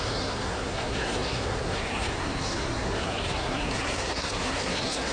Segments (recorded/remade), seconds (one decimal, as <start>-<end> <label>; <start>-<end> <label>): 0.0-5.1 remade